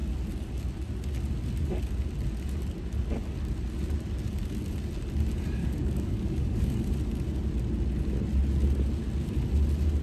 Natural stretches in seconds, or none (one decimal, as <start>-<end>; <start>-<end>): 0.0-5.6; 6.8-10.0